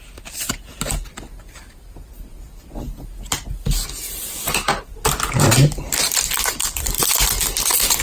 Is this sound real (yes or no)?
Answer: yes